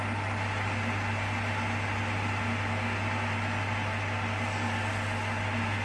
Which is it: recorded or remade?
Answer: recorded